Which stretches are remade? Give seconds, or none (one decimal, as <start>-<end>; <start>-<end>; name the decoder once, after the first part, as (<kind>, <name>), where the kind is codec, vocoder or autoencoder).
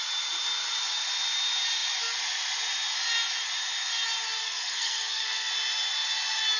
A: 4.4-5.5 (codec, SNAC)